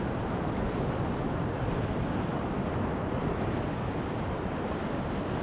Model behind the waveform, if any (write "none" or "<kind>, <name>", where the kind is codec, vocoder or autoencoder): none